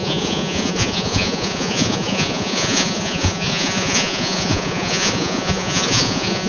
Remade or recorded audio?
remade